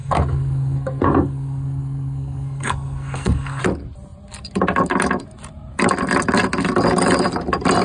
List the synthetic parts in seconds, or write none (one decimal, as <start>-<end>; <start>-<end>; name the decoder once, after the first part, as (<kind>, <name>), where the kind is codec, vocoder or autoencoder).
0.0-3.6 (codec, SNAC)